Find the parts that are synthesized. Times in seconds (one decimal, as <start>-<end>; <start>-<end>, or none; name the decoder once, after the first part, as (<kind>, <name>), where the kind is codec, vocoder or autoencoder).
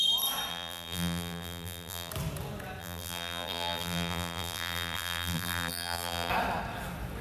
0.5-2.1 (vocoder, BigVGAN v2); 2.8-6.3